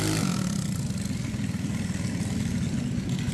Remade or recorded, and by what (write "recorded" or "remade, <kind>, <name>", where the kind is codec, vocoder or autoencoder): recorded